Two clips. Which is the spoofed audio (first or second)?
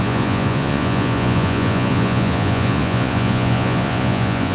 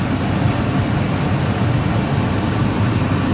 first